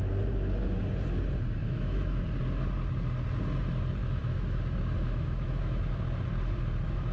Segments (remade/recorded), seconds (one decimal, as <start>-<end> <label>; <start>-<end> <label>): 0.0-1.6 recorded; 1.6-2.2 remade; 2.2-4.2 recorded; 4.2-5.8 remade; 5.8-7.1 recorded